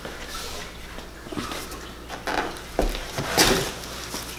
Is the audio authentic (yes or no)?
yes